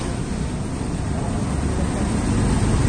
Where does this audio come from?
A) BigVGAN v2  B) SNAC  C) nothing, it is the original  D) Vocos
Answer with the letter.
C